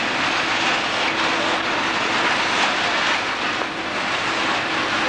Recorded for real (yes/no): yes